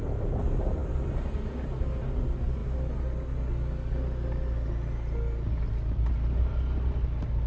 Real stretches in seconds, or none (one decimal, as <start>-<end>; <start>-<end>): 0.0-7.5